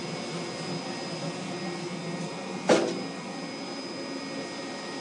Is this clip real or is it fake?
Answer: real